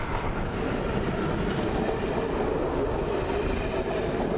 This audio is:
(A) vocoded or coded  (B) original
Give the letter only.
B